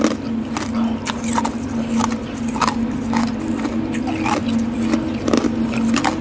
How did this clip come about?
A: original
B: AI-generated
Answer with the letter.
A